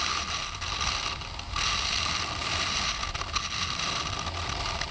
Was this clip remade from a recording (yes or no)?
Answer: no